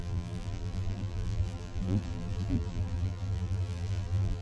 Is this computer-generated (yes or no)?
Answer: yes